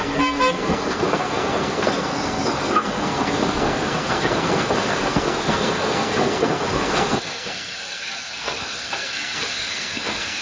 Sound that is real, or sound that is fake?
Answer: fake